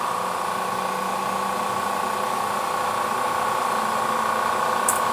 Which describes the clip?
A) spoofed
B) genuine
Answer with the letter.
B